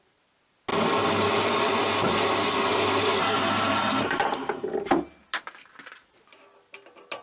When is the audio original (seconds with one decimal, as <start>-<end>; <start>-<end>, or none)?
0.0-0.7; 1.7-2.7; 4.3-7.2